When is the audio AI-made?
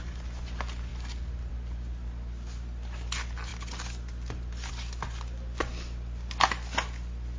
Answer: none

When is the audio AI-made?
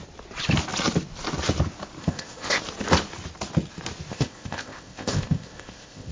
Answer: 2.0-2.6 (codec, ZipCodec); 4.1-6.1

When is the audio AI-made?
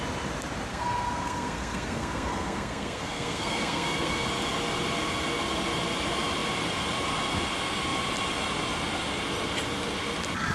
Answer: 0.7-4.3 (codec, SNAC)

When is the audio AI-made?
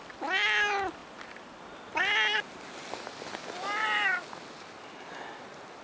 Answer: none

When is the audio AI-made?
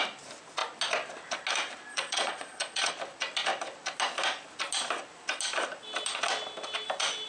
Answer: 1.9-2.9 (vocoder, Vocos)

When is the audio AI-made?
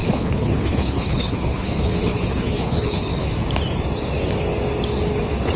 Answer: 0.0-3.3 (codec, HILCodec)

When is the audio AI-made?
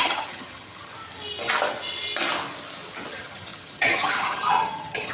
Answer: 0.0-0.9 (vocoder, HiFi-GAN); 3.1-5.1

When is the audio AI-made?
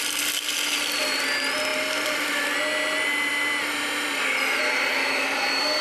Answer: none